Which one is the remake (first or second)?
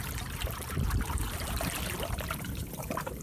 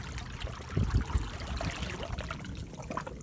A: first